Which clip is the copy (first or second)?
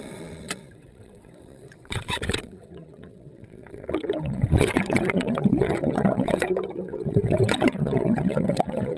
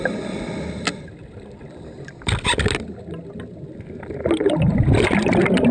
first